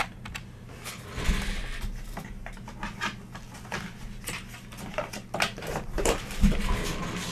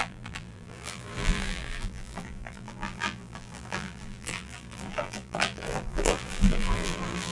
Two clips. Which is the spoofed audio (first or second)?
second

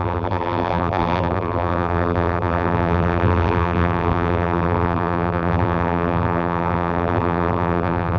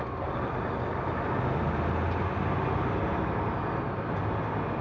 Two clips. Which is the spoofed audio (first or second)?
first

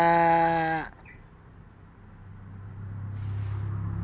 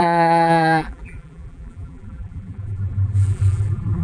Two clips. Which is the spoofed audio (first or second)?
second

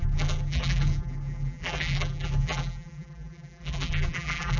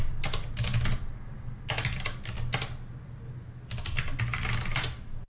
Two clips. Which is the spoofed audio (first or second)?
first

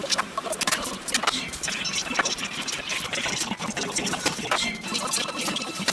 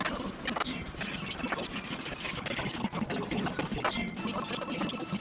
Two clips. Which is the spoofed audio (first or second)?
first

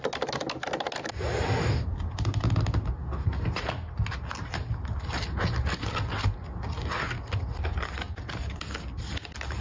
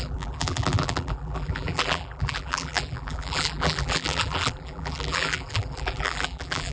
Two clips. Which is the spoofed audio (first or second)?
second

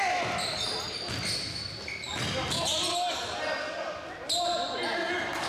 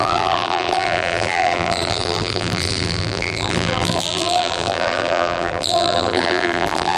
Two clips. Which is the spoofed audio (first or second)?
second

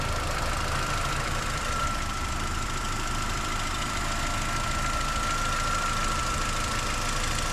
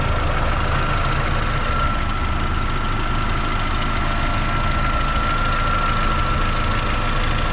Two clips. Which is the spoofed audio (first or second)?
first